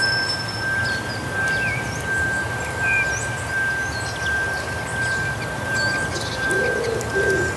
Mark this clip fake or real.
real